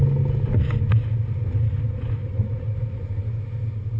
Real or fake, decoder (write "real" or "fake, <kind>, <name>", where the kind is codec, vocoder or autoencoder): real